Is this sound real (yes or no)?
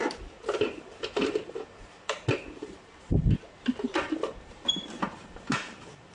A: no